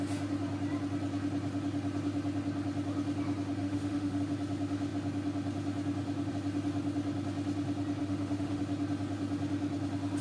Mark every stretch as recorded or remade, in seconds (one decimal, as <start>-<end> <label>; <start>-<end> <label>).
0.0-3.6 recorded; 3.6-4.2 remade; 4.2-8.0 recorded; 8.0-8.6 remade; 8.6-10.2 recorded